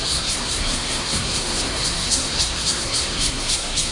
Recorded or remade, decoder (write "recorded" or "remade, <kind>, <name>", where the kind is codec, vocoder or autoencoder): remade, codec, SNAC